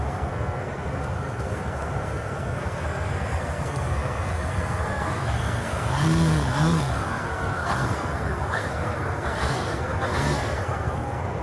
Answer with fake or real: fake